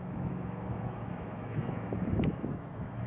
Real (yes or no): no